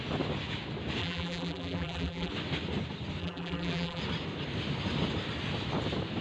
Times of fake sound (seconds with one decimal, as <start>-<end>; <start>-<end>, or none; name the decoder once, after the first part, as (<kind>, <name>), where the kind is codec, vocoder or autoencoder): 1.0-2.3 (vocoder, BigVGAN v2); 3.2-4.0